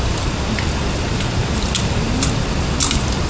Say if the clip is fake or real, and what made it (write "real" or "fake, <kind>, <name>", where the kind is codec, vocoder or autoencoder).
real